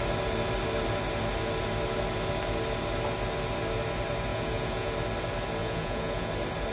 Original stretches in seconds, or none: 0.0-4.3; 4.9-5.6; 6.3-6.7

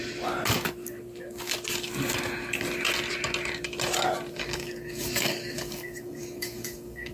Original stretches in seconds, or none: 0.0-4.3

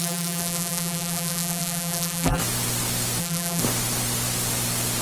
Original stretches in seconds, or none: 2.4-3.2; 3.6-5.0

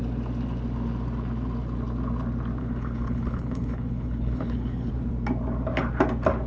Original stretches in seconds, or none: 0.0-2.6; 4.9-6.5

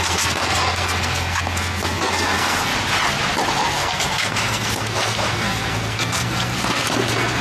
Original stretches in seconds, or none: 2.7-3.5

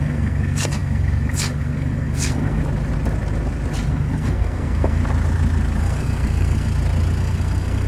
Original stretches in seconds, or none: 2.6-3.9; 5.0-5.8; 6.7-7.2

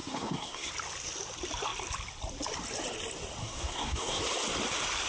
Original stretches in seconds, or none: 0.7-3.4; 4.2-5.1